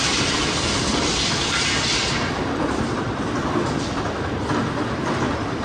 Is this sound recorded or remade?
remade